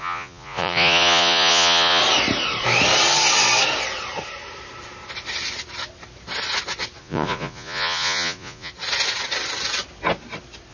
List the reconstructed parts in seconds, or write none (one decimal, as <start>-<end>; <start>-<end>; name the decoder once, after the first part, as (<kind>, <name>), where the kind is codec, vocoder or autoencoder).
0.0-2.0 (vocoder, Vocos); 7.0-8.7